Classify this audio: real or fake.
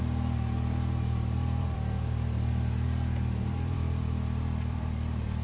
fake